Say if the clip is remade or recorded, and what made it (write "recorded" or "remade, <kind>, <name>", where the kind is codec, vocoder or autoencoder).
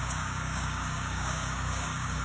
remade, codec, DAC